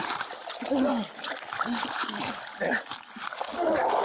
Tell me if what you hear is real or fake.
real